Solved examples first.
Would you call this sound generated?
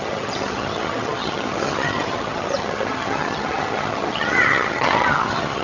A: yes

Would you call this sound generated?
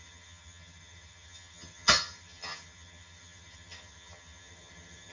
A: yes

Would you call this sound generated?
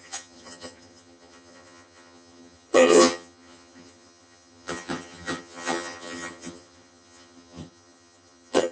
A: yes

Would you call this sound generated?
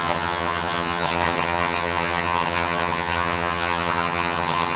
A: yes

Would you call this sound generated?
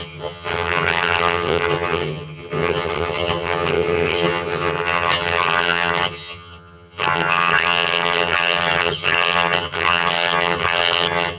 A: yes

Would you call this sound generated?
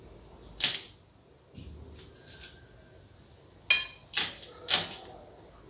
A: no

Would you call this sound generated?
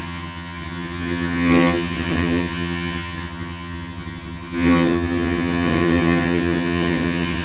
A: yes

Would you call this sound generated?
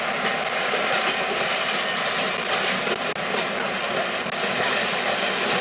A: no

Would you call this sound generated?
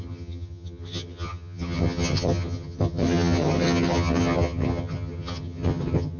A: yes